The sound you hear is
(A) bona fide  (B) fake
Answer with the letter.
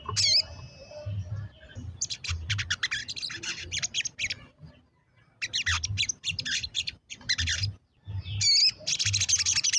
A